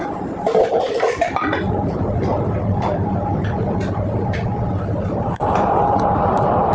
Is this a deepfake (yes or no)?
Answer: no